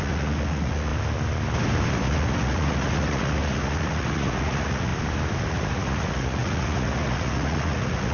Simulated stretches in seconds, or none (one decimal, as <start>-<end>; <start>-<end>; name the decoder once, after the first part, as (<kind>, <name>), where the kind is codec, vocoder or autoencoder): 0.0-0.9 (vocoder, Vocos); 1.9-4.9; 5.5-8.1

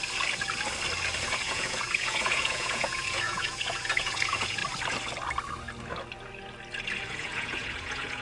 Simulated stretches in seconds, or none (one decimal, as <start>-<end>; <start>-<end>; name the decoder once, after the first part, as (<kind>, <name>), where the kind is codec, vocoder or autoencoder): 1.3-4.6 (vocoder, Vocos); 7.1-8.2

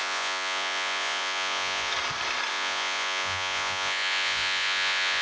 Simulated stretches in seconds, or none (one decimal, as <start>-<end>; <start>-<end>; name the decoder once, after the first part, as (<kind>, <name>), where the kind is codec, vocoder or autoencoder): 0.0-1.9 (vocoder, Vocos); 2.5-5.2

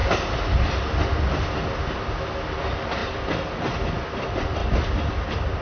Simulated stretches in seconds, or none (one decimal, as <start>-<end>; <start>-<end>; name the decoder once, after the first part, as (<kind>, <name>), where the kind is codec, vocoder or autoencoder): none

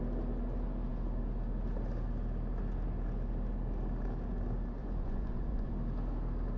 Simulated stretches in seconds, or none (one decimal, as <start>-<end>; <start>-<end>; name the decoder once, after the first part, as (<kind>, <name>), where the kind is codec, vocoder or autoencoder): 4.8-5.7 (vocoder, Vocos)